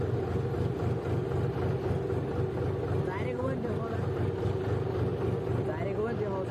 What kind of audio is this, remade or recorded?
recorded